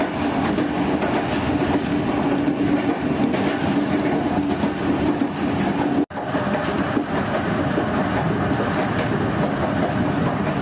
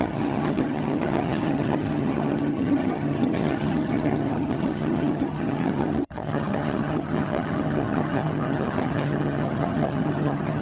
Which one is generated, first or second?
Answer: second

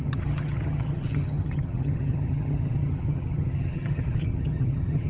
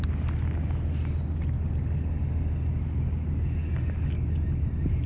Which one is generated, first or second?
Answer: first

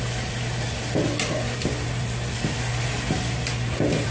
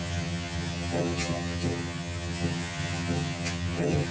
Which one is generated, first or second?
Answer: second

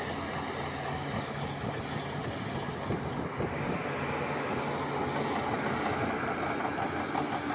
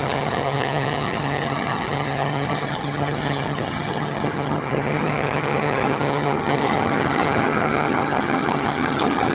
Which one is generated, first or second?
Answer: second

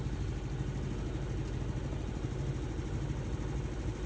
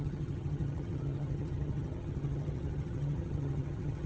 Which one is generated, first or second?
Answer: second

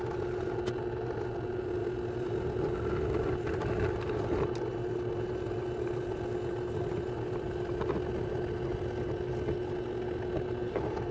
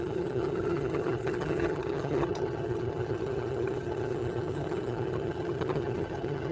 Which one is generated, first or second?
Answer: second